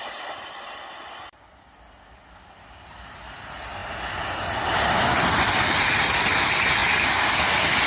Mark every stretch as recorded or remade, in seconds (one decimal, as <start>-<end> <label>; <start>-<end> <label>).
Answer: 0.0-7.9 recorded